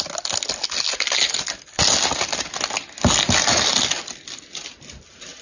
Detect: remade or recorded recorded